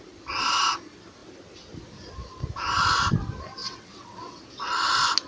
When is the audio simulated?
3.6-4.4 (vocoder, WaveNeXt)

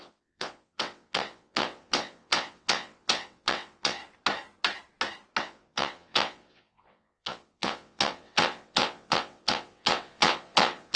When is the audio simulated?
0.0-4.0 (vocoder, WaveNeXt); 5.4-11.0

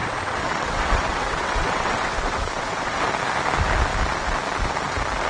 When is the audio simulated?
0.0-3.0 (vocoder, WaveNeXt)